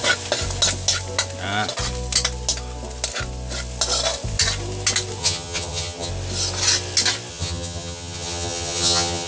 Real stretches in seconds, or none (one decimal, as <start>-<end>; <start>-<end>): 0.0-5.2; 6.1-7.3